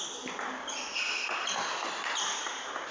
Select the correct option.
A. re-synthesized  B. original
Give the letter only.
B